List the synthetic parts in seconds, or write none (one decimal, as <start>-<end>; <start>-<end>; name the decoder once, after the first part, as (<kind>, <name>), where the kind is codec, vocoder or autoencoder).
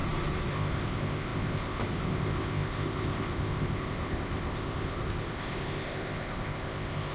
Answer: 0.5-7.1 (codec, ZipCodec)